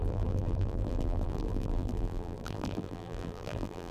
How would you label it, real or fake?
fake